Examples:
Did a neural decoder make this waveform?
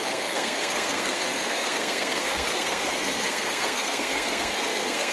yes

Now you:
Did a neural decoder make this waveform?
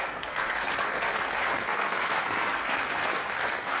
yes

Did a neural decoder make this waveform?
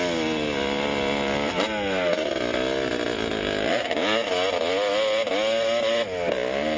no